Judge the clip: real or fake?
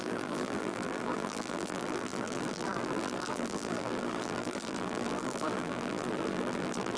fake